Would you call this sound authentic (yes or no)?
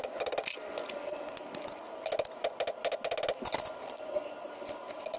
yes